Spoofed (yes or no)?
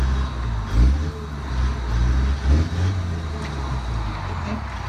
no